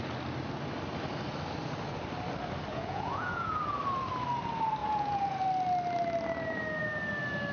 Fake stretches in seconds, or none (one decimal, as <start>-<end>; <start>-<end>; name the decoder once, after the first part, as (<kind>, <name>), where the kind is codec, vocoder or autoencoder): 2.7-3.6 (vocoder, Vocos); 4.8-5.4